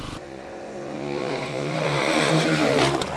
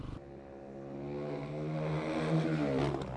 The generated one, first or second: first